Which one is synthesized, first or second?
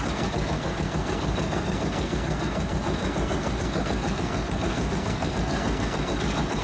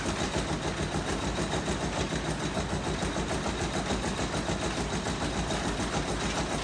first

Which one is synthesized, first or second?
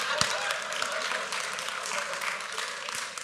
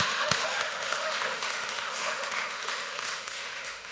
second